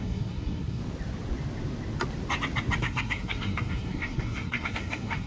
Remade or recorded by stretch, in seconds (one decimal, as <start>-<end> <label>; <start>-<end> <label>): 0.0-0.8 remade; 0.8-2.8 recorded; 2.8-5.3 remade